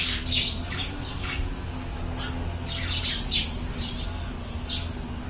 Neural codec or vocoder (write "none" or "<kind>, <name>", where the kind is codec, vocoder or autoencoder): none